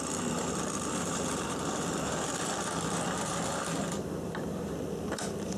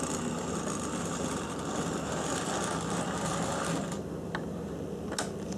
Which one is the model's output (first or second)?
first